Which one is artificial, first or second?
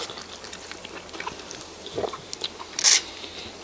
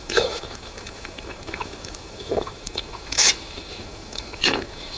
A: second